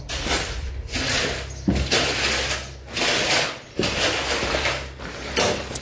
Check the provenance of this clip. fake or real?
real